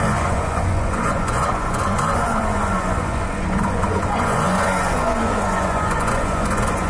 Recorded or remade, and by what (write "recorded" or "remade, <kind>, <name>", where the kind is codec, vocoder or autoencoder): remade, vocoder, Vocos